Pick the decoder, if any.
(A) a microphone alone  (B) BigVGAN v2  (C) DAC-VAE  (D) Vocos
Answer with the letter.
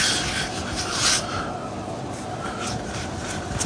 A